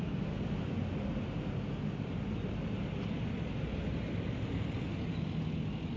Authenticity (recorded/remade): recorded